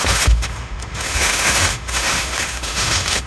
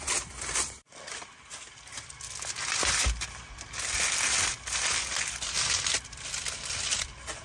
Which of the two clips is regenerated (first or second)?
first